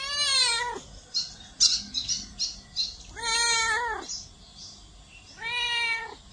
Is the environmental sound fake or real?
real